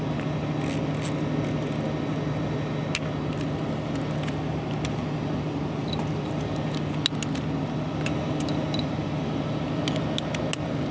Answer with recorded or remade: recorded